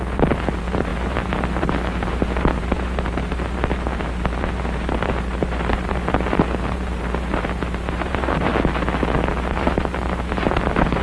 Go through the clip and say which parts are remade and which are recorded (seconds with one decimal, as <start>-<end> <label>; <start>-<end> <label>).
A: 0.0-8.5 remade; 8.5-9.5 recorded; 9.5-11.0 remade